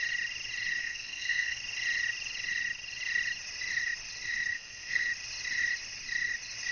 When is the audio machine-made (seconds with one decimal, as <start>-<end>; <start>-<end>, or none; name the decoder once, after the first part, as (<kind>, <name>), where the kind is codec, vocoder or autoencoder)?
0.8-1.6 (codec, SNAC); 4.5-5.0